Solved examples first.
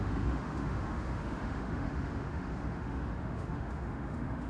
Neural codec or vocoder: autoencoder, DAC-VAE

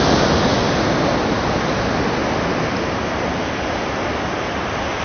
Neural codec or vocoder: none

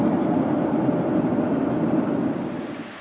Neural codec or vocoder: none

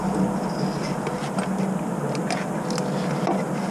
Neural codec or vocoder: none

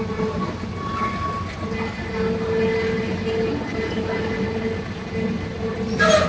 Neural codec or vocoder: none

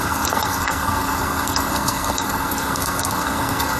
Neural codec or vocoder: codec, SNAC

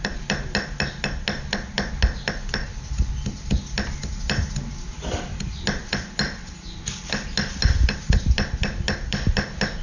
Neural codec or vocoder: none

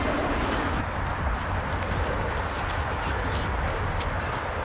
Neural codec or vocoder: none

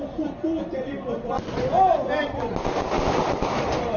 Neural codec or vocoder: none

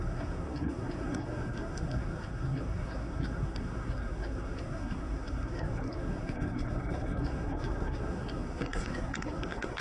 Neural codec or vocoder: codec, SNAC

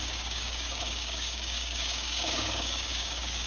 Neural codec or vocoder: codec, DAC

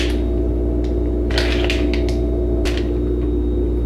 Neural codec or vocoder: none